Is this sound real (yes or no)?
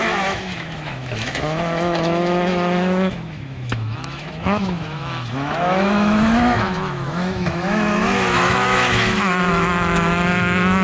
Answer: no